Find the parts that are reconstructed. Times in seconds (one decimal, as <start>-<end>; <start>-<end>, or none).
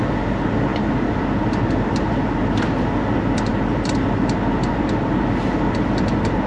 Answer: none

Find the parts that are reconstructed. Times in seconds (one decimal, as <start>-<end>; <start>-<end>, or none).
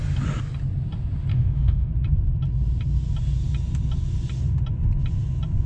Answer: 1.3-1.9